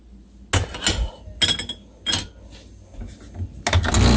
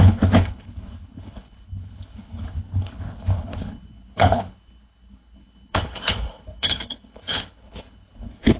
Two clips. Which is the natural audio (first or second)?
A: first